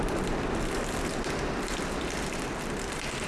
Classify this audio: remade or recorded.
remade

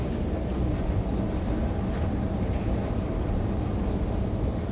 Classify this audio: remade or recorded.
recorded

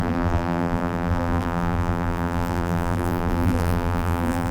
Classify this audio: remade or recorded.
remade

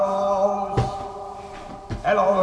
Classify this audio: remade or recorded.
recorded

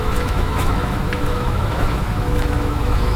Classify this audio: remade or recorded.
remade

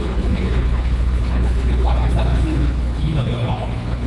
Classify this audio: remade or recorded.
remade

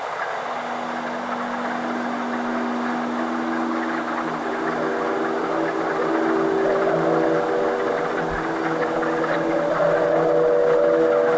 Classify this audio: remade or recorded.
recorded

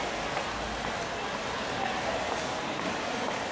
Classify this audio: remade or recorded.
recorded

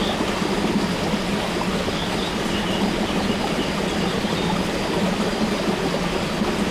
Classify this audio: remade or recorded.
recorded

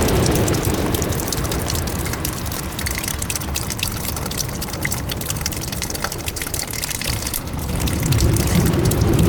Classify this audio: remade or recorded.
remade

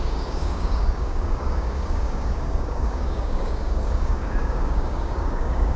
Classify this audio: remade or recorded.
remade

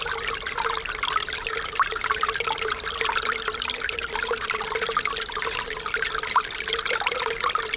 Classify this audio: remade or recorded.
recorded